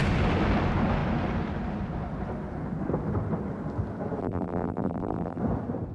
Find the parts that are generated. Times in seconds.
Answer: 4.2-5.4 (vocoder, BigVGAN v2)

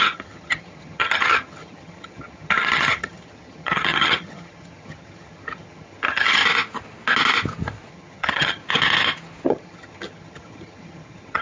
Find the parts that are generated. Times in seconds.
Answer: 0.0-6.4 (vocoder, HiFi-GAN); 7.9-8.6; 9.5-11.4

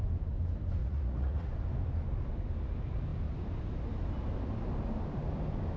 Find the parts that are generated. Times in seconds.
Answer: 0.8-1.5 (vocoder, Vocos)

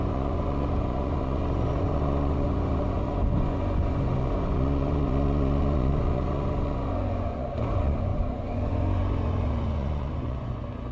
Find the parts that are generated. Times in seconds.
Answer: 0.0-10.9 (vocoder, Vocos)

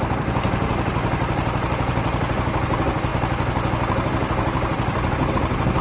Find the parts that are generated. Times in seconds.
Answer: none

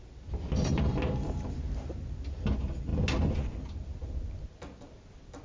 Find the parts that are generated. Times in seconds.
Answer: none